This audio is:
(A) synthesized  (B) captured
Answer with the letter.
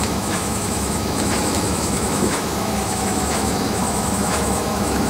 A